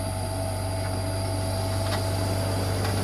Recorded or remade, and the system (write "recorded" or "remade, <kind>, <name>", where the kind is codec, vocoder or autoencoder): recorded